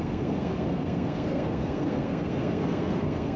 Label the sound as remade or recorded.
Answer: remade